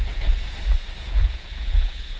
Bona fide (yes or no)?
no